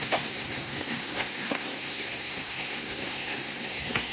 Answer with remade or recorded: remade